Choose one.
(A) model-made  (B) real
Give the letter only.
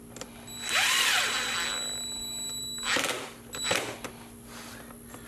B